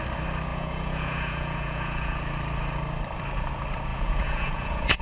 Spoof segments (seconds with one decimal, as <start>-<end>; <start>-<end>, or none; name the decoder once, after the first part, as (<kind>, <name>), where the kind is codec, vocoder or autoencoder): 0.5-2.2 (vocoder, Vocos); 3.9-5.0